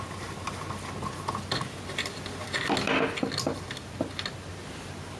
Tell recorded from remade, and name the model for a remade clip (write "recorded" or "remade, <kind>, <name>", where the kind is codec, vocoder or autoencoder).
recorded